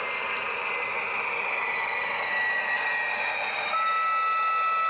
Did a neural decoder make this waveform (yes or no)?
no